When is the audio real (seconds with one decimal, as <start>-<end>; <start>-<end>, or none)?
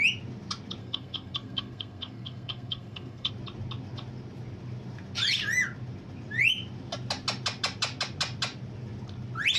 0.0-0.8; 3.3-9.6